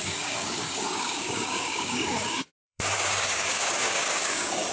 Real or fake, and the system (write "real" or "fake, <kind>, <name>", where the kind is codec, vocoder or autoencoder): fake, codec, DAC